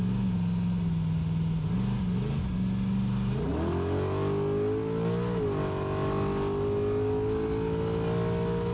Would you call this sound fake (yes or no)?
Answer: no